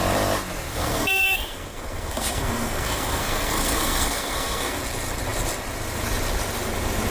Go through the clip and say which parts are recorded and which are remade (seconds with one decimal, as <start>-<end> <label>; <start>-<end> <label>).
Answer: 0.0-0.7 recorded; 0.7-4.8 remade; 4.8-7.1 recorded